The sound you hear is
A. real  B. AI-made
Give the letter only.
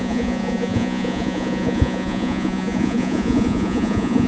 B